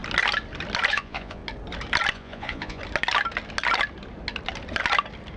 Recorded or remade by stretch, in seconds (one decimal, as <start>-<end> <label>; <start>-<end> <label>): 0.0-0.9 recorded; 0.9-1.4 remade; 1.4-2.1 recorded; 2.1-2.8 remade; 2.8-5.4 recorded